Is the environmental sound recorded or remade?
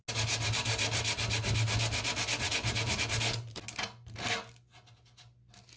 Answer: recorded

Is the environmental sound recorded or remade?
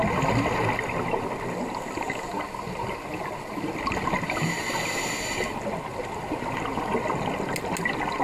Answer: recorded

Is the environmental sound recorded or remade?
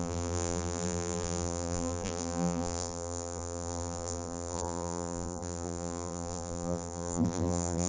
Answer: remade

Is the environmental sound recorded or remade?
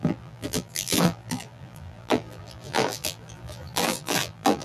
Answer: remade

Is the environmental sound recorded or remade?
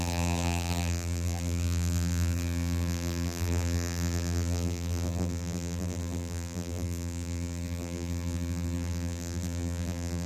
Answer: remade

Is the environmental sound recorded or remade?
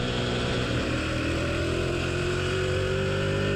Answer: recorded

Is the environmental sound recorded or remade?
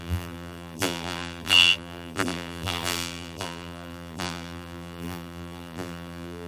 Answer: remade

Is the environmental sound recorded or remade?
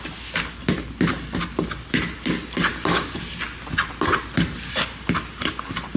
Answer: recorded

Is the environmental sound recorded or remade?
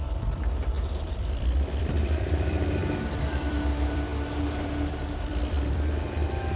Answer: remade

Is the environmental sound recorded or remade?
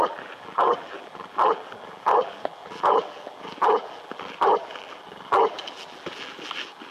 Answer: remade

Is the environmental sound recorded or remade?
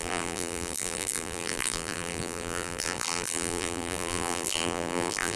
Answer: remade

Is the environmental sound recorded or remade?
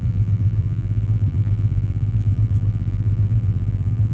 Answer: remade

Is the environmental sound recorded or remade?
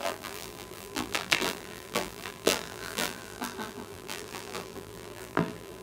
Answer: remade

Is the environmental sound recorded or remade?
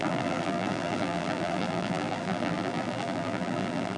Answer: remade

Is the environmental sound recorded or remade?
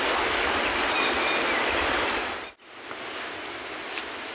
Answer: recorded